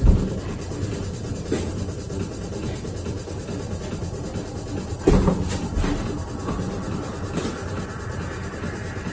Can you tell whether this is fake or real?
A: real